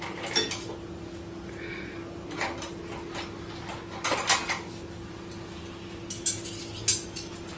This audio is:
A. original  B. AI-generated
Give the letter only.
A